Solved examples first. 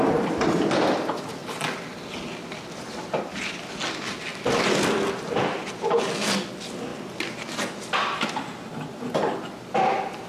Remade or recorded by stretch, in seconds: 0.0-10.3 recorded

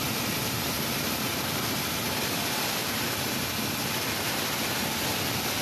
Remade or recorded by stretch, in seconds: 0.0-3.4 remade; 3.4-5.6 recorded